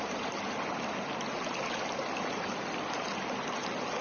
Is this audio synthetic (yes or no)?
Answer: no